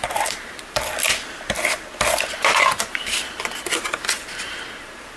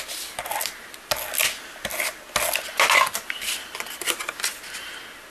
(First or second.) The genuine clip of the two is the second